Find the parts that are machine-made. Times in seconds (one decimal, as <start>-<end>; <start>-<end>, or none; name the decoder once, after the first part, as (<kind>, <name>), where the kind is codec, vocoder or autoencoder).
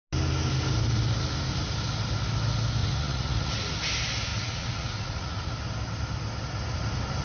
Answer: 2.8-3.5 (vocoder, Vocos); 4.3-5.5